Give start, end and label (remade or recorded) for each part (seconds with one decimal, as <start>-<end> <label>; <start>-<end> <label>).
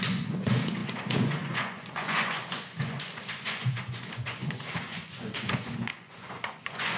0.0-7.0 remade